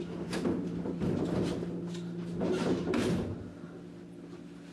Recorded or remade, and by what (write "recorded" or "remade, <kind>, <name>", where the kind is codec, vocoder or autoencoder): recorded